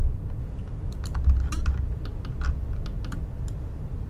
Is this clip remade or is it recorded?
recorded